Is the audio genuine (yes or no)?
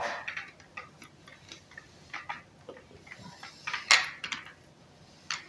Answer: yes